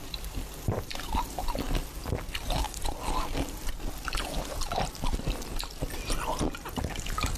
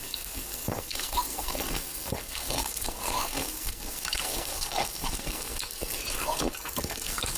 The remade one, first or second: second